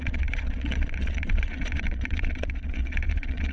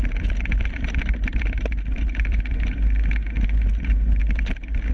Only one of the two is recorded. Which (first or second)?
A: second